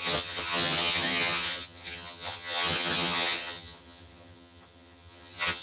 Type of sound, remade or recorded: remade